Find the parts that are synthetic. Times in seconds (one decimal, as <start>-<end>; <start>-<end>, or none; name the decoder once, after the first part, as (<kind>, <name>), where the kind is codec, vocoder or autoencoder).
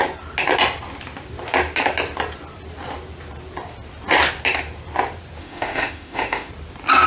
5.4-6.5 (autoencoder, DAC-VAE)